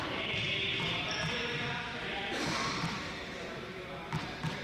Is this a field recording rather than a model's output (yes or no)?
no